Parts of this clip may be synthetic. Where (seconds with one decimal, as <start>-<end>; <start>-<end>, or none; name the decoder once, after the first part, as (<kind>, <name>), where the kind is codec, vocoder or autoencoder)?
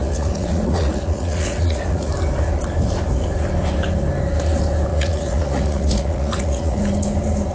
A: 0.0-2.1 (vocoder, Vocos); 4.9-6.8